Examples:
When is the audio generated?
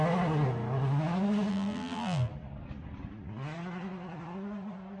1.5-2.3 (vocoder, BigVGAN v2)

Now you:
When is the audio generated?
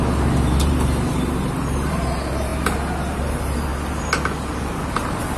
0.0-2.5 (vocoder, BigVGAN v2); 3.1-3.7; 4.9-5.4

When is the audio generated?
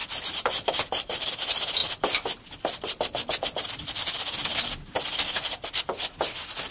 0.0-1.4 (vocoder, BigVGAN v2)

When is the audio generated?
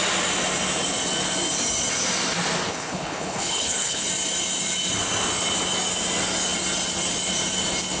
2.7-4.1 (codec, HILCodec)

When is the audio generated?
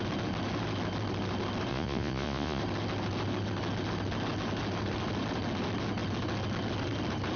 1.7-2.6 (vocoder, Vocos)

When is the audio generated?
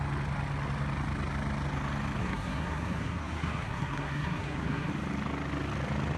2.2-4.9 (codec, SNAC)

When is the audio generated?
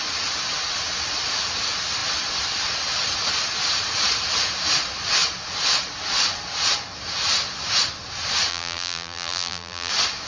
8.5-9.9 (vocoder, BigVGAN v2)